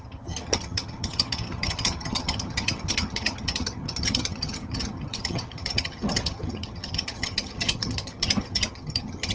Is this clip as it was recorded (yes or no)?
no